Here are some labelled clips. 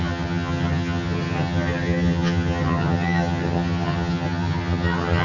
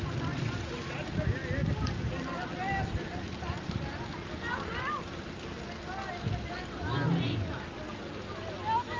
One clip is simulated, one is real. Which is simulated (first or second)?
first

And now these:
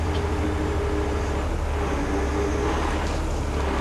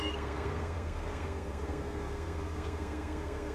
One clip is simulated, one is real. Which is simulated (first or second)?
second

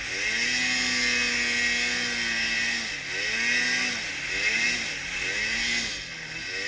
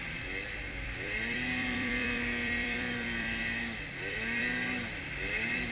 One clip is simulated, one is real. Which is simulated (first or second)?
second